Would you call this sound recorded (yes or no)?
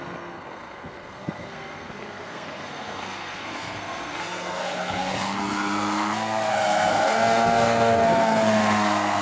no